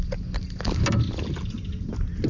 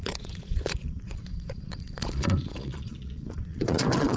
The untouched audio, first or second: first